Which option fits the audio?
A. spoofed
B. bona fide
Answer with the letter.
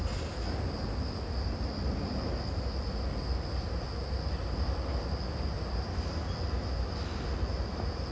B